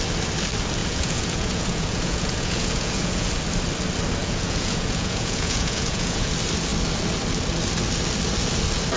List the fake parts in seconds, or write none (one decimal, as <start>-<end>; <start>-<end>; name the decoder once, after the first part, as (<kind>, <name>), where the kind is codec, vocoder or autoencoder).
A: 0.8-3.3 (vocoder, Vocos); 4.2-6.3